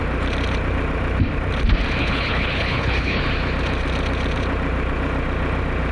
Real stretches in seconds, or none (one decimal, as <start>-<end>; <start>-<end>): 0.0-2.0; 3.2-5.9